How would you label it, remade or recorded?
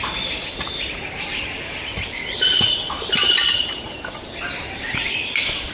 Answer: recorded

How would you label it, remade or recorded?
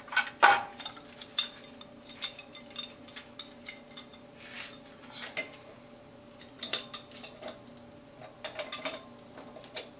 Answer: recorded